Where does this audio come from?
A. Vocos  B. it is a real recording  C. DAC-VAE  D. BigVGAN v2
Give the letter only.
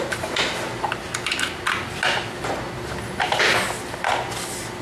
B